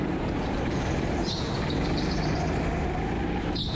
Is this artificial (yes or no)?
yes